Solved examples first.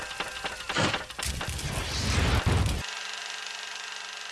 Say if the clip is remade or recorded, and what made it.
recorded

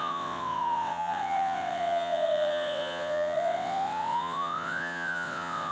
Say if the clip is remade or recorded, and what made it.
remade, vocoder, WaveNeXt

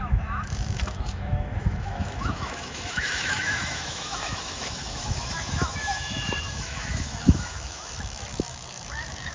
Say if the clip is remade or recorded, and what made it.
remade, autoencoder, DAC-VAE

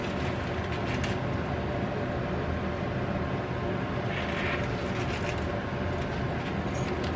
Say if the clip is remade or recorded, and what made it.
recorded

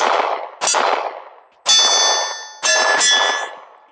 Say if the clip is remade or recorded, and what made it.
recorded